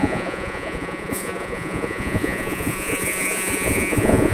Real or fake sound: fake